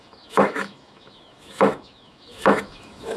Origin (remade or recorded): remade